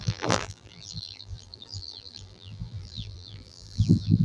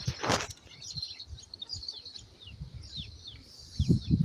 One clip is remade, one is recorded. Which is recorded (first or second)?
second